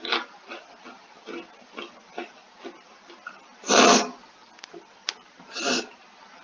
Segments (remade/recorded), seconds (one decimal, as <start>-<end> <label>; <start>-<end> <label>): 0.0-6.4 recorded